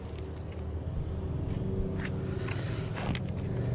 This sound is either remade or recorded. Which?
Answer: recorded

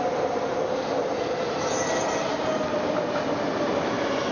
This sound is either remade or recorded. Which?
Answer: recorded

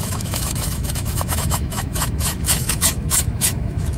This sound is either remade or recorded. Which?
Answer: remade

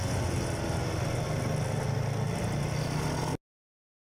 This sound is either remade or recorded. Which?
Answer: recorded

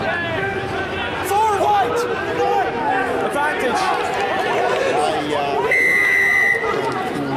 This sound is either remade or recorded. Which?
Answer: recorded